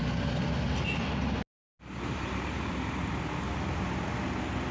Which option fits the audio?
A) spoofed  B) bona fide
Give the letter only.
B